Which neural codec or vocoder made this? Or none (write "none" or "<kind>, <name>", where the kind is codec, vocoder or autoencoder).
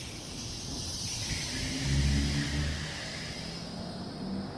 none